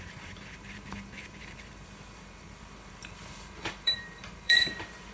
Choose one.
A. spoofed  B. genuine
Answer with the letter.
A